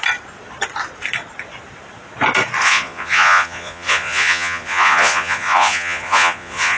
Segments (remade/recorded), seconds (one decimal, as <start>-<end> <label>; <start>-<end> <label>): 0.0-2.6 recorded; 2.6-6.8 remade